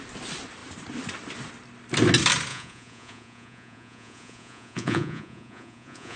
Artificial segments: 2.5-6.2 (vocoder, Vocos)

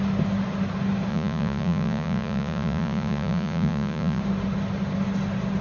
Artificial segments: 1.1-4.2 (vocoder, Vocos)

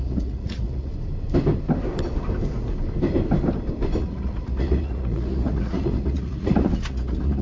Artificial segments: 0.0-0.9 (vocoder, Vocos); 4.0-7.4

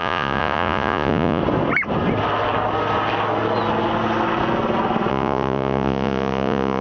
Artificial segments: 0.0-1.4 (vocoder, Vocos); 5.1-6.8